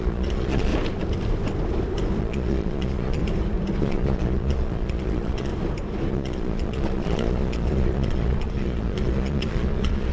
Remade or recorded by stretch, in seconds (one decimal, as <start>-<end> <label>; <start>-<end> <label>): 0.0-0.7 remade; 0.7-2.2 recorded; 2.2-3.2 remade; 3.2-3.8 recorded; 3.8-5.5 remade; 5.5-6.1 recorded; 6.1-10.1 remade